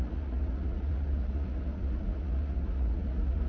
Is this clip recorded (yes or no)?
no